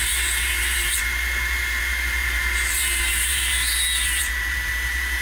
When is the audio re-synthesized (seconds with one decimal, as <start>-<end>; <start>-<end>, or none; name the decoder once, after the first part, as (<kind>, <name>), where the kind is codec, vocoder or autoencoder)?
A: 0.0-3.7 (vocoder, BigVGAN v2); 4.2-5.2